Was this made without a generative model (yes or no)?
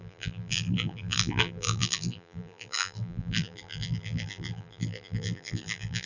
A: no